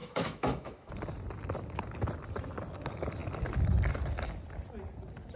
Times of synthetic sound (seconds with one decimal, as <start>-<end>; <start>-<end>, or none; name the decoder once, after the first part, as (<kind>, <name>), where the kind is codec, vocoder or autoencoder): 0.0-0.9 (autoencoder, DAC-VAE)